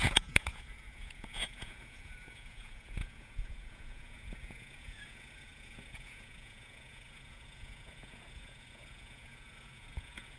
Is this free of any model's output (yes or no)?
no